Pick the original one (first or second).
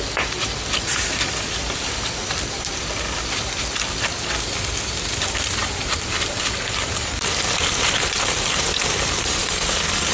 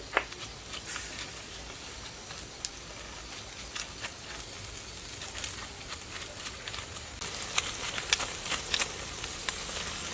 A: second